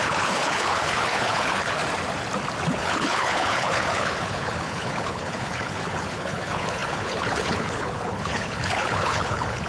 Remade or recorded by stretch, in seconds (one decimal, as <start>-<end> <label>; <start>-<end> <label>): 0.0-1.8 remade; 1.8-2.7 recorded; 2.7-9.7 remade